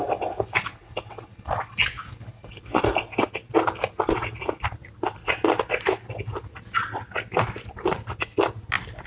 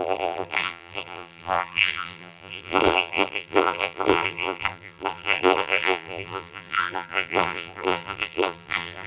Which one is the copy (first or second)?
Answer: second